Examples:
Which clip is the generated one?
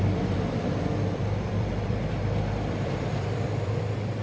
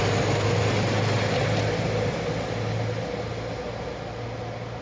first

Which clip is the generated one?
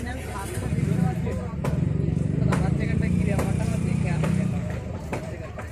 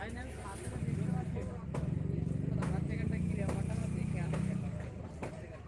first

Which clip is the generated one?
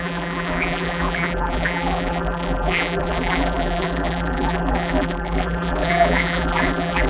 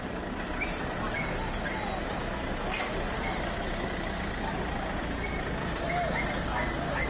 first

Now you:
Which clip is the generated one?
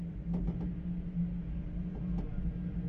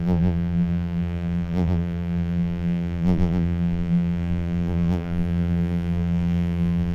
second